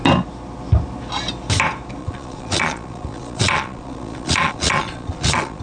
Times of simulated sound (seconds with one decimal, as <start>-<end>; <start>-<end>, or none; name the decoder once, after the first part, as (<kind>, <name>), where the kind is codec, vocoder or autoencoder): 2.0-5.6 (vocoder, Vocos)